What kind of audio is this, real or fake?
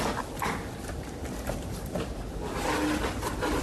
real